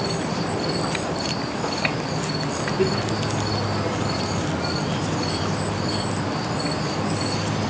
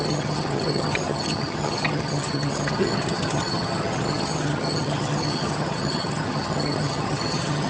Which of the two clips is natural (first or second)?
first